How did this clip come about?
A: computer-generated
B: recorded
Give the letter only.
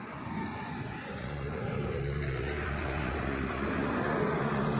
A